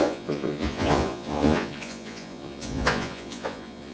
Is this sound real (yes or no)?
no